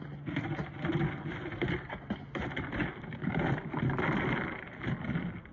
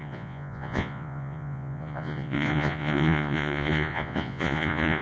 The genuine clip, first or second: first